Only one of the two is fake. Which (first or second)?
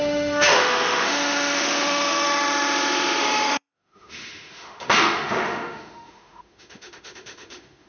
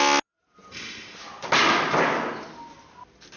first